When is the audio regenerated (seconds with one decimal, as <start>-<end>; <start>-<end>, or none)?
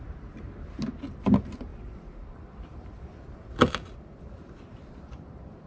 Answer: 1.7-5.1